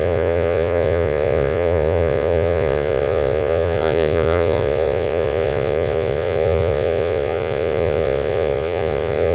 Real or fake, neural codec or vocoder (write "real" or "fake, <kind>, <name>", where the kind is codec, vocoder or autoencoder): fake, vocoder, Vocos